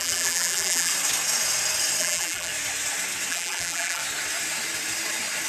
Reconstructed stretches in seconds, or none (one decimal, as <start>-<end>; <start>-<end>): 0.0-0.9; 2.0-2.5; 3.3-4.0